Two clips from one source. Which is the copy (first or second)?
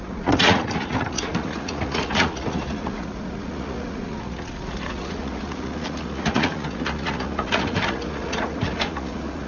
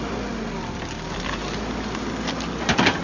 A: first